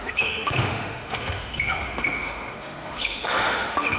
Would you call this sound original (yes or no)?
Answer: no